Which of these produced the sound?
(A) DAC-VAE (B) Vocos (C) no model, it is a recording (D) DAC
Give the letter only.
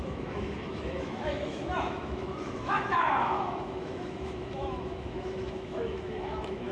A